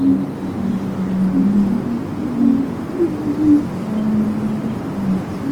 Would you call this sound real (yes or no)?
yes